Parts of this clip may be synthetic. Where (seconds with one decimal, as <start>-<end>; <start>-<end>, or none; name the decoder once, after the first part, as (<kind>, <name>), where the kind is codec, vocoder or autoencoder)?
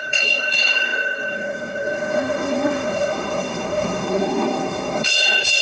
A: 0.0-5.6 (codec, SNAC)